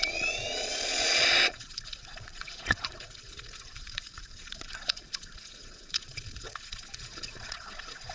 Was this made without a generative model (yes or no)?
no